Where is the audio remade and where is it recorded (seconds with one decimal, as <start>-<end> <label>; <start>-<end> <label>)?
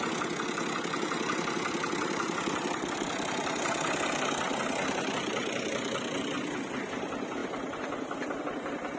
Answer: 0.0-9.0 recorded